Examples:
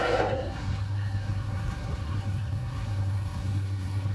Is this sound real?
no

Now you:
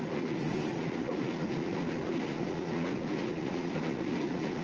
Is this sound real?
no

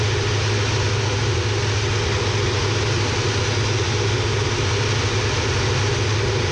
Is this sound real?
yes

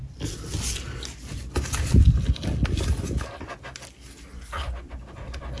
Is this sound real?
yes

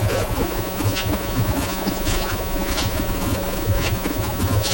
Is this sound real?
no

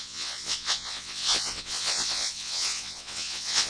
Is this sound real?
no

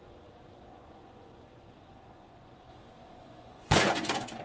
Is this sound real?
no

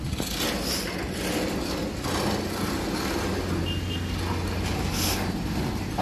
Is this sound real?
yes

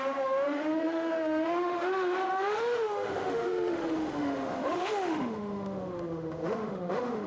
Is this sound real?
no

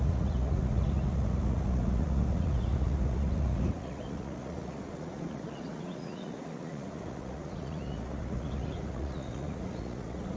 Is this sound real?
no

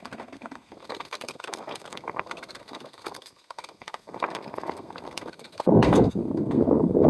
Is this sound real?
no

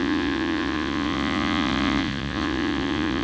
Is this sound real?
no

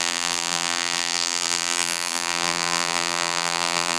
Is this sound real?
no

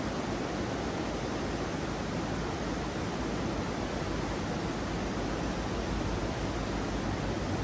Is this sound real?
yes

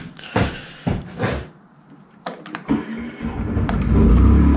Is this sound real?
yes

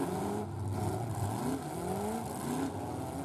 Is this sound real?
yes